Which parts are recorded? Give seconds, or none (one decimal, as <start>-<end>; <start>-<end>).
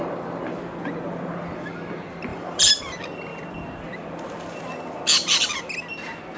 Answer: 0.0-2.3; 2.8-3.3; 4.6-6.4